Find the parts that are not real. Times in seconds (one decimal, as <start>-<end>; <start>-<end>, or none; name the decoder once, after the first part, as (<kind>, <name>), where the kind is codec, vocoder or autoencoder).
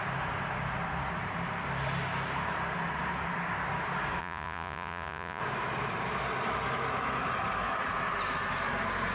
4.2-5.4 (vocoder, Vocos)